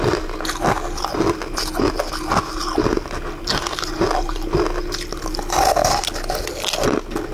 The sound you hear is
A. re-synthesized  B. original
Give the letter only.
B